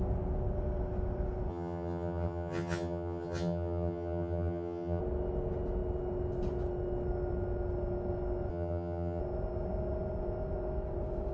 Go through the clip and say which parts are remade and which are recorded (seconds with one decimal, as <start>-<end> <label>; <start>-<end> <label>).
0.0-1.5 recorded; 1.5-5.0 remade; 5.0-8.5 recorded; 8.5-9.2 remade; 9.2-11.3 recorded